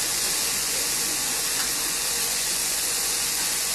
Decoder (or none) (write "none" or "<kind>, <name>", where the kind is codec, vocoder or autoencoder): vocoder, Vocos